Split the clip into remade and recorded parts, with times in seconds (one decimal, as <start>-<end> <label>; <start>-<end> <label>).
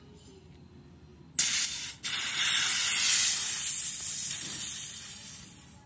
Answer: 0.0-5.9 recorded